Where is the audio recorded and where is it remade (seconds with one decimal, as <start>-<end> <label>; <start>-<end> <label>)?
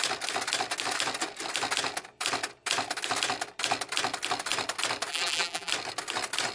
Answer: 0.0-5.1 recorded; 5.1-5.7 remade; 5.7-6.5 recorded